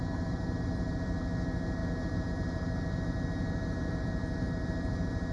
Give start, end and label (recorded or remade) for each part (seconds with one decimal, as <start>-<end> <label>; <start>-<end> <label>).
0.0-5.3 recorded